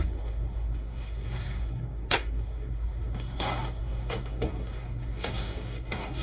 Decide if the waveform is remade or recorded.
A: remade